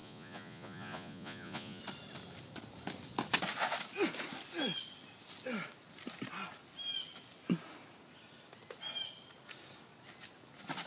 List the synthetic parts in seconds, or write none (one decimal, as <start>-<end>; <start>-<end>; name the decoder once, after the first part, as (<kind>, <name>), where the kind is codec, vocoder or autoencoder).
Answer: 0.0-1.8 (vocoder, Vocos)